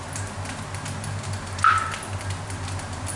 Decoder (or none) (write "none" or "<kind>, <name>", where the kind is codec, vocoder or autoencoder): none